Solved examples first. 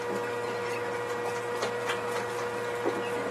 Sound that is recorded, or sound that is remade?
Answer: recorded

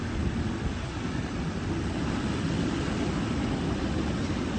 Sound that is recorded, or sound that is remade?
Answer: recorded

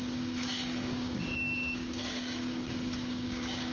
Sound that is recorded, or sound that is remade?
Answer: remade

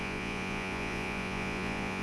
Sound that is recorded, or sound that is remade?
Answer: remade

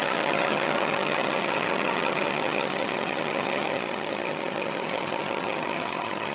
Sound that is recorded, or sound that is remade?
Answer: remade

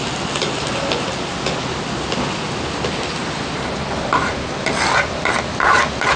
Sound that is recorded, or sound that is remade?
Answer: recorded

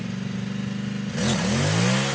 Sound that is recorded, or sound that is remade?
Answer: recorded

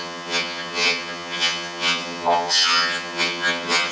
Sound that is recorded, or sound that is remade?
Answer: remade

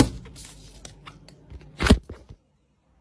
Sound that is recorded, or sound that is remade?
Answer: recorded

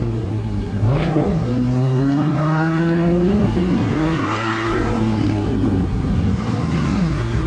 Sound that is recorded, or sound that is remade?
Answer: remade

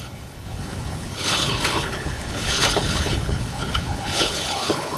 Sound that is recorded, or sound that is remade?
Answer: remade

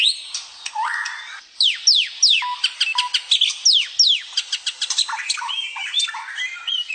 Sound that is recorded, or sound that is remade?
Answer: recorded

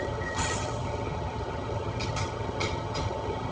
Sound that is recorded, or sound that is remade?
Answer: remade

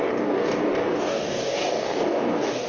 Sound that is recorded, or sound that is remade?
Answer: remade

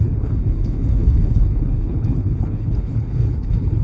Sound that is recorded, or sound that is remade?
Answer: remade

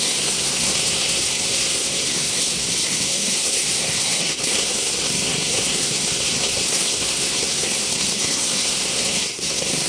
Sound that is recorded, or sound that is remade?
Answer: remade